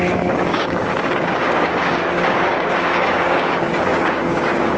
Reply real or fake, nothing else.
fake